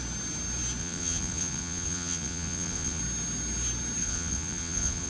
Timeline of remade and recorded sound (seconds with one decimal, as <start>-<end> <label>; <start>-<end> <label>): 0.0-0.8 recorded; 0.8-3.0 remade; 3.0-4.0 recorded; 4.0-5.1 remade